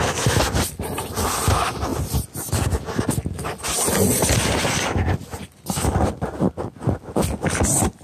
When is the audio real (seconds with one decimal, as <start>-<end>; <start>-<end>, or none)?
0.0-8.0